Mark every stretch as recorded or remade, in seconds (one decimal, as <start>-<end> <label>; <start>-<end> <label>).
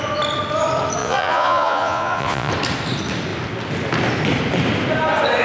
0.0-1.0 recorded; 1.0-2.5 remade; 2.5-5.4 recorded